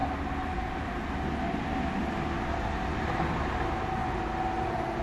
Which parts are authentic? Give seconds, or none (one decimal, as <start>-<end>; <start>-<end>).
0.0-5.0